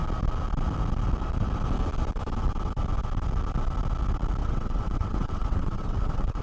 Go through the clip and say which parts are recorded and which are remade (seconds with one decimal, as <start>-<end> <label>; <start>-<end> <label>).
0.0-4.4 recorded; 4.4-6.4 remade